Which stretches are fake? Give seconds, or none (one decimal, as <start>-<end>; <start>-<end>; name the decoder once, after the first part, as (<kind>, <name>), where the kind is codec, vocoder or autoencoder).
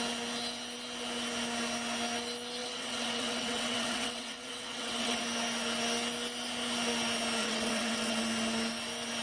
2.6-5.2 (vocoder, WaveNeXt); 7.4-8.2